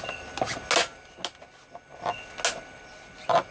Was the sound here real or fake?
real